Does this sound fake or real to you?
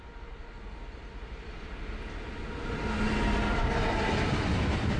real